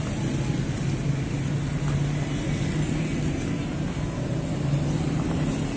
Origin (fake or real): real